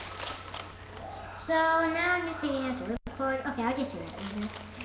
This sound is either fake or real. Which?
real